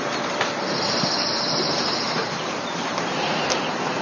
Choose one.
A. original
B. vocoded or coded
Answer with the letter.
B